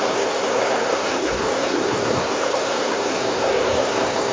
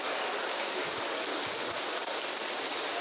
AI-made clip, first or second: first